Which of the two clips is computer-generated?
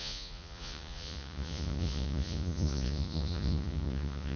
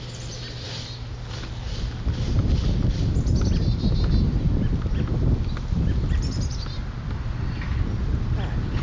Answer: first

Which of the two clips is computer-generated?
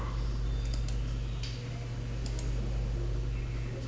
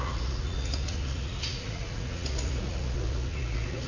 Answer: second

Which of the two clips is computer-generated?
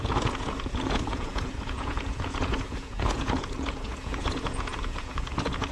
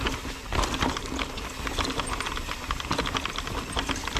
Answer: first